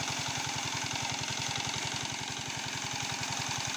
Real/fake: real